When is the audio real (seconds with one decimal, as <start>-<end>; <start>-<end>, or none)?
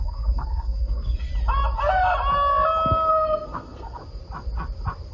1.3-3.1; 4.0-5.1